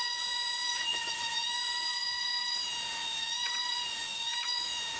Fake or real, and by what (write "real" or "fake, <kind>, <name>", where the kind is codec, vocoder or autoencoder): fake, vocoder, Vocos